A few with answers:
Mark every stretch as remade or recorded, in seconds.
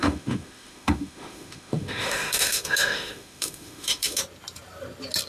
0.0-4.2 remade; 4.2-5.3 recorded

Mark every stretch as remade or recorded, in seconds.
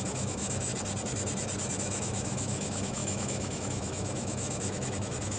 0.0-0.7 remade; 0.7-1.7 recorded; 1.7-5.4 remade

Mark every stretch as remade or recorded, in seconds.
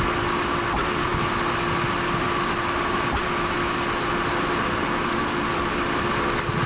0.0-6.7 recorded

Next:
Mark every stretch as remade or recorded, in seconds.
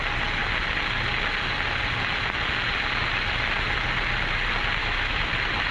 0.0-4.8 recorded; 4.8-5.3 remade; 5.3-5.7 recorded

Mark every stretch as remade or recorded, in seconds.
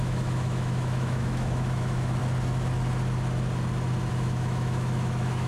0.0-2.2 remade; 2.2-4.1 recorded; 4.1-5.5 remade